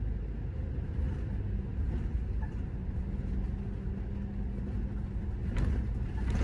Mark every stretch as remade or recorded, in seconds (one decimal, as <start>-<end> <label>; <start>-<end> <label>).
0.0-2.1 recorded; 2.1-3.0 remade; 3.0-6.4 recorded